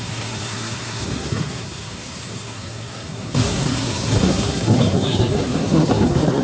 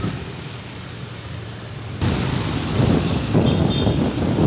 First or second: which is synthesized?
first